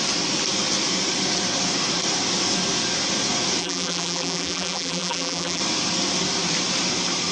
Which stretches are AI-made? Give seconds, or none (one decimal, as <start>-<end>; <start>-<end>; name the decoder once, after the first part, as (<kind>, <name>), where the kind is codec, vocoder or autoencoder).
3.6-5.6 (vocoder, BigVGAN v2)